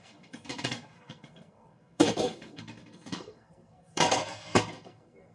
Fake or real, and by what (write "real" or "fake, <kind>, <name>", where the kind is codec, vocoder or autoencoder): fake, codec, SNAC